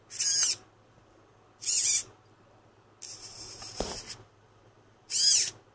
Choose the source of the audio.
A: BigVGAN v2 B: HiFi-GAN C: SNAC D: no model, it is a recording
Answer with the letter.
D